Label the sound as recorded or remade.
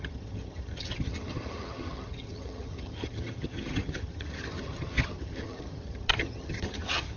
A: remade